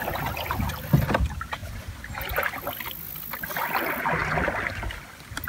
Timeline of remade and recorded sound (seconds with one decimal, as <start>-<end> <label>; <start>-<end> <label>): 0.0-5.5 recorded